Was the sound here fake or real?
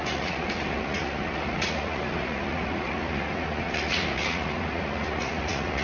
fake